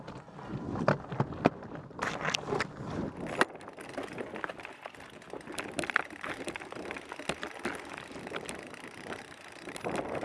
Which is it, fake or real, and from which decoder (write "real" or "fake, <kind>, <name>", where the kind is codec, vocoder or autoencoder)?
real